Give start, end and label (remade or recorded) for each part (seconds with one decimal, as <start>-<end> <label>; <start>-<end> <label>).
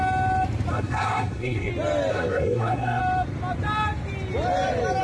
0.0-0.7 recorded; 0.7-1.7 remade; 1.7-2.1 recorded; 2.1-3.0 remade; 3.0-5.0 recorded